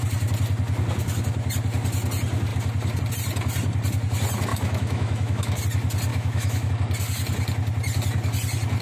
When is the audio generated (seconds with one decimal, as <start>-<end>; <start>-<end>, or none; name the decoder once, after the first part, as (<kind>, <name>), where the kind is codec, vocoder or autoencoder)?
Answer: 4.5-5.6 (autoencoder, DAC-VAE); 6.1-6.7